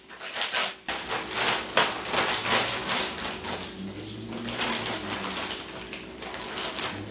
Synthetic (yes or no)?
no